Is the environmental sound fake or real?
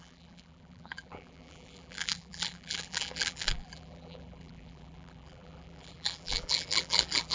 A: fake